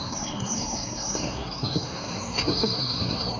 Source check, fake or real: fake